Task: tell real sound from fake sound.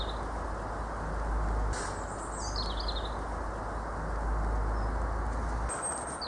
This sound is real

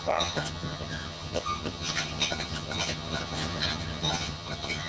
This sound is fake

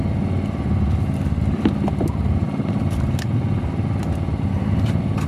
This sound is real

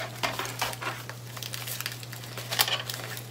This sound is real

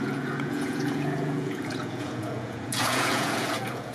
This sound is fake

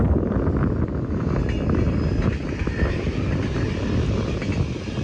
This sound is real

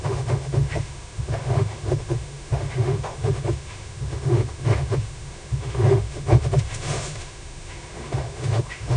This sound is fake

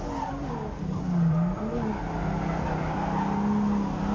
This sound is real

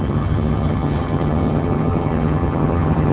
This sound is fake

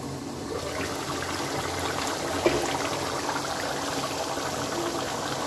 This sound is real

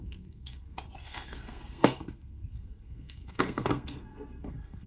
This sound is fake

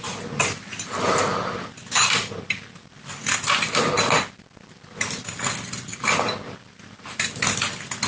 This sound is real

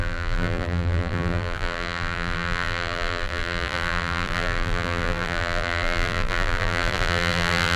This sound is fake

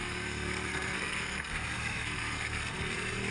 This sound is fake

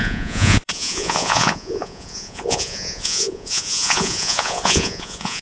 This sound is fake